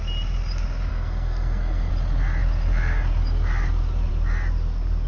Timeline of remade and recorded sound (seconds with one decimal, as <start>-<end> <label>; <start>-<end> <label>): 0.0-0.9 recorded; 0.9-1.9 remade; 1.9-5.1 recorded